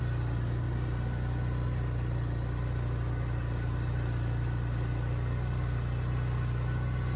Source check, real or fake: real